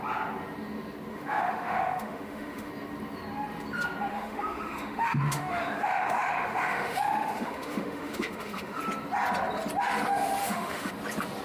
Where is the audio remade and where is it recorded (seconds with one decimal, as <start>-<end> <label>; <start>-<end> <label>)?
0.0-1.1 recorded; 1.1-2.7 remade; 2.7-4.1 recorded; 4.1-8.8 remade; 8.8-10.4 recorded; 10.4-10.9 remade; 10.9-11.4 recorded